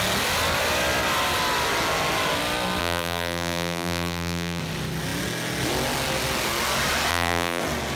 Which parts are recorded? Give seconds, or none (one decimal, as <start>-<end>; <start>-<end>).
0.0-2.8; 4.6-7.1; 7.6-8.0